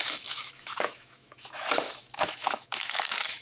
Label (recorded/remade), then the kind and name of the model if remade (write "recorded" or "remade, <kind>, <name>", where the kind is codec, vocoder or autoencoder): remade, autoencoder, DAC-VAE